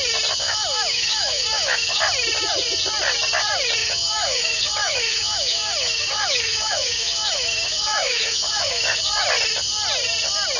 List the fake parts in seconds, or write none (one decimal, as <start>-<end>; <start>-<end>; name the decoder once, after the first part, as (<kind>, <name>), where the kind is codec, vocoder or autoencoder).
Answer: 0.4-2.0 (autoencoder, DAC-VAE); 3.8-9.0